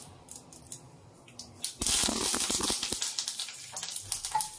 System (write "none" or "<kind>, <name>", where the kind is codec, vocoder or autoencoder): none